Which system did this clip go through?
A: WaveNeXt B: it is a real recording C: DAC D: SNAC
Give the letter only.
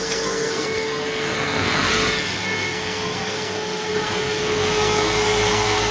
D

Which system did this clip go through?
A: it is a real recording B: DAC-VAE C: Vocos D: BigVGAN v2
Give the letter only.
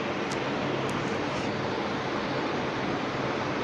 A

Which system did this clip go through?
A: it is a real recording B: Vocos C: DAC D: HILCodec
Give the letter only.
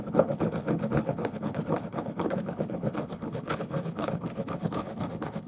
D